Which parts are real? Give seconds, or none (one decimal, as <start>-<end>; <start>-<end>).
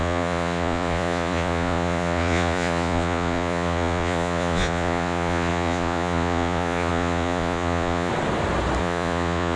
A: 8.1-8.8